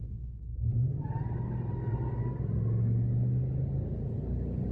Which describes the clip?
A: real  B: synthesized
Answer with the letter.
A